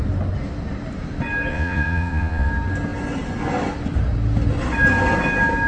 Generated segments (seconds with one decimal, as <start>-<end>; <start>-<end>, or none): 1.5-2.5